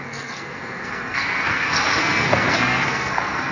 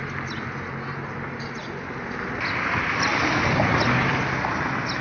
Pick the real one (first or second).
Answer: second